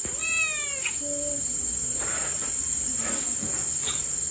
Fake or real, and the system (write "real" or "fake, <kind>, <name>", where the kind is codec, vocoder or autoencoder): real